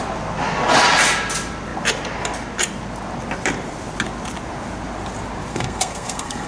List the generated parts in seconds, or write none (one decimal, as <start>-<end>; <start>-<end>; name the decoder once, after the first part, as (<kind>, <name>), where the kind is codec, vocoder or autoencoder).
5.5-6.5 (codec, SNAC)